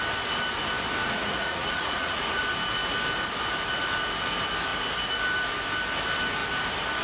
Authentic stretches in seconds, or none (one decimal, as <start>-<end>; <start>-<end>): 0.0-1.0; 2.4-7.0